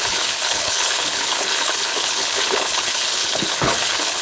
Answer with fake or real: fake